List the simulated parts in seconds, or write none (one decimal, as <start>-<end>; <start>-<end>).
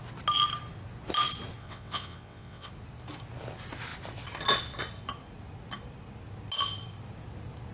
1.6-2.7